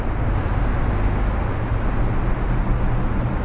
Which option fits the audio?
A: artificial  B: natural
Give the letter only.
B